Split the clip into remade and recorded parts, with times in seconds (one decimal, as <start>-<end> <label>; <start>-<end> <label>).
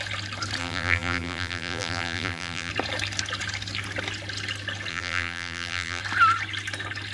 0.0-0.6 recorded; 0.6-2.7 remade; 2.7-4.9 recorded; 4.9-6.0 remade; 6.0-7.1 recorded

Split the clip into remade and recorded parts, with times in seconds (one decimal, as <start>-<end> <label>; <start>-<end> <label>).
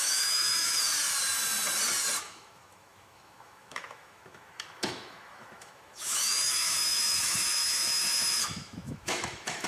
0.0-0.9 remade; 0.9-2.2 recorded; 2.2-9.7 remade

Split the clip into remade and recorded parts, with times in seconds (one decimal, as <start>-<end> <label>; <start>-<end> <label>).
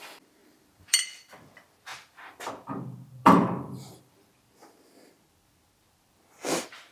0.0-0.4 recorded; 0.4-1.3 remade; 1.3-1.9 recorded; 1.9-2.5 remade; 2.5-3.2 recorded; 3.2-4.3 remade; 4.3-6.9 recorded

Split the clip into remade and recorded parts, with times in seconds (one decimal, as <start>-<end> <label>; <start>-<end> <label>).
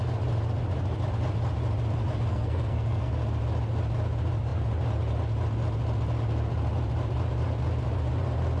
0.0-2.3 recorded; 2.3-3.1 remade; 3.1-8.6 recorded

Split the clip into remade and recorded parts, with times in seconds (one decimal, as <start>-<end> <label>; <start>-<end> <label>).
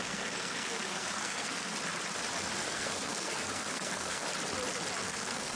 0.0-1.7 remade; 1.7-2.6 recorded; 2.6-4.3 remade; 4.3-5.0 recorded; 5.0-5.5 remade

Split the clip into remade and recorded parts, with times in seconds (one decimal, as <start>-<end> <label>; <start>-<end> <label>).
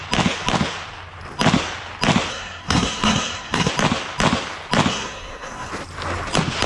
0.0-2.3 recorded; 2.3-3.7 remade; 3.7-4.9 recorded; 4.9-5.7 remade; 5.7-6.7 recorded